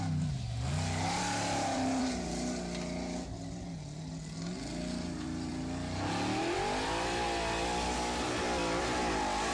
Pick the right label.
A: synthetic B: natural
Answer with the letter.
B